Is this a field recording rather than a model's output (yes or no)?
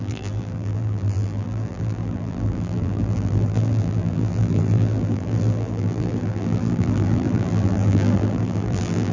no